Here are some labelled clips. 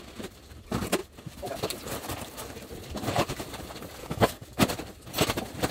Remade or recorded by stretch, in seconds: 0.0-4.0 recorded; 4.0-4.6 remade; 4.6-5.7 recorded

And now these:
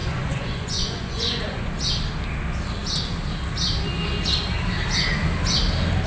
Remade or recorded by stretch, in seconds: 0.0-1.7 remade; 1.7-6.1 recorded

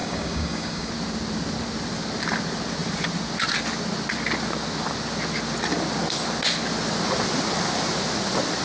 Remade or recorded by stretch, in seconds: 0.0-0.9 remade; 0.9-8.6 recorded

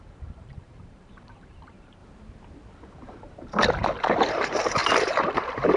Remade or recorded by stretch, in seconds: 0.0-2.0 remade; 2.0-4.1 recorded; 4.1-5.8 remade

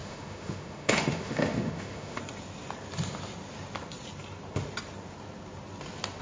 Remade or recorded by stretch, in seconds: 0.0-2.2 remade; 2.2-6.2 recorded

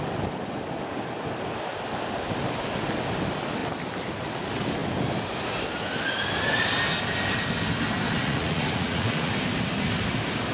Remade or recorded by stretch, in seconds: 0.0-8.2 recorded; 8.2-9.3 remade; 9.3-10.5 recorded

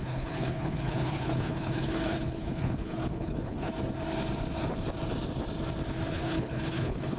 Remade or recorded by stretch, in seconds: 0.0-3.7 remade; 3.7-6.1 recorded; 6.1-7.2 remade